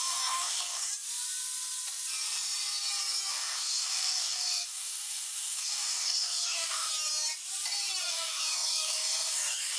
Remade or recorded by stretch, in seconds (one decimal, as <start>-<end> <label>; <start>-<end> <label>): 0.0-0.9 remade; 0.9-3.3 recorded; 3.3-6.9 remade; 6.9-8.1 recorded; 8.1-9.8 remade

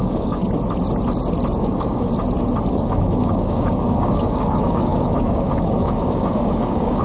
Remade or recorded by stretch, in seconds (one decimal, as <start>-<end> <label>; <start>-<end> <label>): 0.0-0.4 remade; 0.4-1.6 recorded; 1.6-2.1 remade; 2.1-2.7 recorded; 2.7-7.0 remade

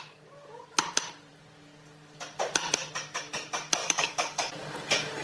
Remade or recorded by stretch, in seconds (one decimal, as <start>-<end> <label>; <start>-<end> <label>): 0.0-3.8 recorded; 3.8-4.5 remade; 4.5-5.2 recorded

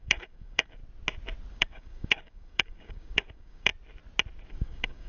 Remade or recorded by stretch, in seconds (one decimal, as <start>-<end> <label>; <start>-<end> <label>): 0.0-0.8 remade; 0.8-1.5 recorded; 1.5-3.7 remade; 3.7-4.5 recorded; 4.5-5.1 remade

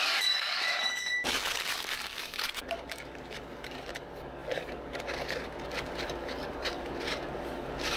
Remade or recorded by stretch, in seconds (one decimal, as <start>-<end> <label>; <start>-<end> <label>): 0.0-8.0 remade